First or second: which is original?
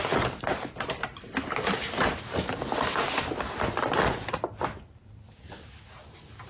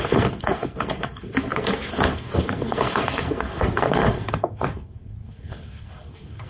first